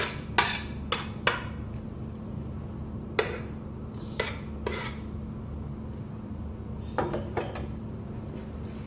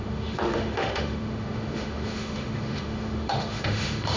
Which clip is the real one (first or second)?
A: first